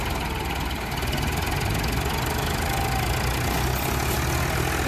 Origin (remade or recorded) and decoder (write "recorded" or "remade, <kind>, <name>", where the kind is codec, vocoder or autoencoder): recorded